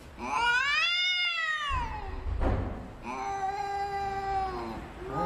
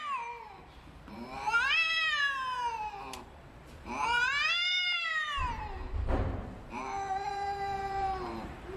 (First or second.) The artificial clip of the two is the second